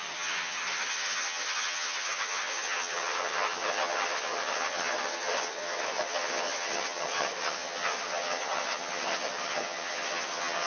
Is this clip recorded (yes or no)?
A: no